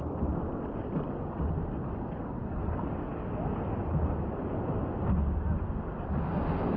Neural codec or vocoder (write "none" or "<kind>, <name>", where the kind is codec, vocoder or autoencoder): none